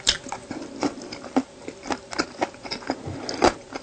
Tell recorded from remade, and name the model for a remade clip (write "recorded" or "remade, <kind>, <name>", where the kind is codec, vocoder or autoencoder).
recorded